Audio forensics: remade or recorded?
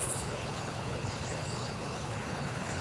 remade